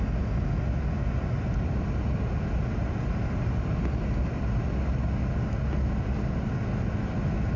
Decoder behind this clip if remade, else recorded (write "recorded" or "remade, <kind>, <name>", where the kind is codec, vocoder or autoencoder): recorded